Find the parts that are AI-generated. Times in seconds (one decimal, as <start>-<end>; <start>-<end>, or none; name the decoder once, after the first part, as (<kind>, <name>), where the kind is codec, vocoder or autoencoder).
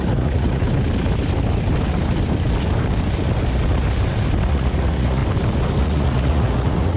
0.0-0.6 (vocoder, Vocos); 4.5-5.2; 5.8-7.0